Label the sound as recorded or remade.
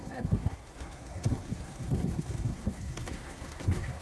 remade